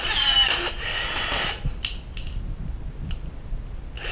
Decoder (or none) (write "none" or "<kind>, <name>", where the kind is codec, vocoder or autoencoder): none